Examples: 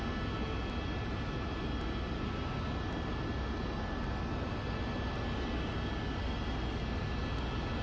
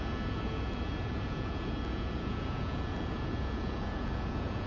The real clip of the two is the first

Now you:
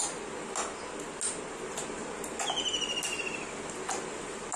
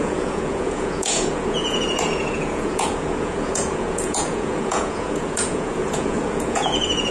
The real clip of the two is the first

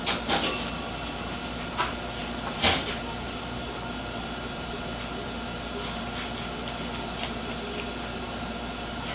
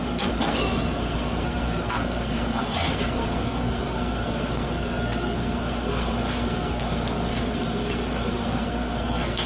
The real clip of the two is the first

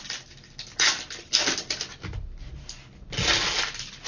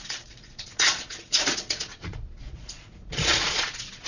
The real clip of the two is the first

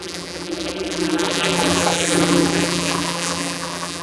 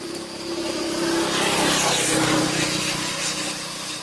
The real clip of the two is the second